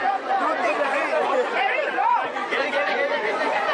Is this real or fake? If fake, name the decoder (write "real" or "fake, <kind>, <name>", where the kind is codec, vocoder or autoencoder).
fake, vocoder, Vocos